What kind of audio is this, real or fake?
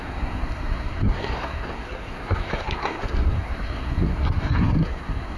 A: fake